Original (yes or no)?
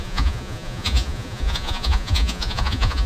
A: no